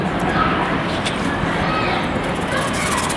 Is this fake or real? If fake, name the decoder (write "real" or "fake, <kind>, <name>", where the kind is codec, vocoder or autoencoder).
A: real